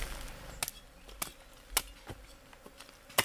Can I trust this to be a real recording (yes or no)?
yes